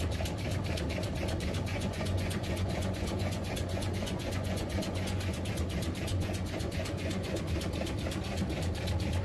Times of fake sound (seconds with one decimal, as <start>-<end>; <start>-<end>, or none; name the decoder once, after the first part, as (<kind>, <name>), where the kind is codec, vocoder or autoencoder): 1.7-5.5 (vocoder, Vocos); 6.1-7.4